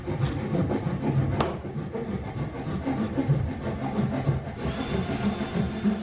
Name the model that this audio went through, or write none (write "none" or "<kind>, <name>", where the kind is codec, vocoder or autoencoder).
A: none